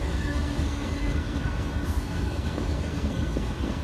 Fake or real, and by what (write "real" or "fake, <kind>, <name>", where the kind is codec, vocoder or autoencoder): fake, codec, SNAC